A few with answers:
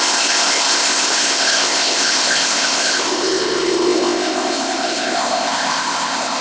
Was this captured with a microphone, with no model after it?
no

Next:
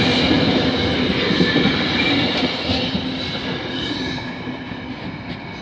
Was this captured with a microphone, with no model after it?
yes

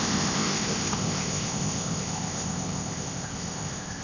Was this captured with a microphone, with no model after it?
no